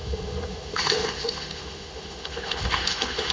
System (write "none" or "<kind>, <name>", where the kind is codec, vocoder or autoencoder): autoencoder, DAC-VAE